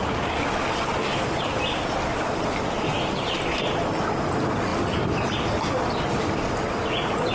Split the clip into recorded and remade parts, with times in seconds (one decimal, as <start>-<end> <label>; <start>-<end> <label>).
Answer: 0.0-7.3 recorded